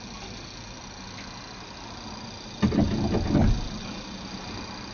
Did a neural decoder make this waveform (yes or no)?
no